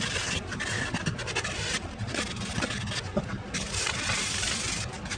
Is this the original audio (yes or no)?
yes